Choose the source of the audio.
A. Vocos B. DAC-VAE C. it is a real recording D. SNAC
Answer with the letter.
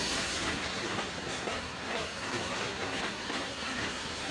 D